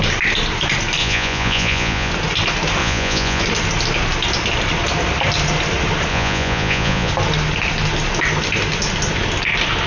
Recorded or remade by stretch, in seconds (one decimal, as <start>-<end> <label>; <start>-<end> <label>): 0.0-1.0 recorded; 1.0-2.1 remade; 2.1-2.8 recorded; 2.8-3.4 remade; 3.4-6.1 recorded; 6.1-7.1 remade; 7.1-9.9 recorded